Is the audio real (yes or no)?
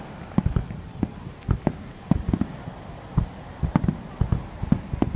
yes